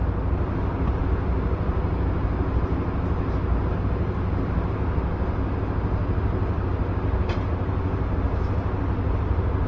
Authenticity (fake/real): real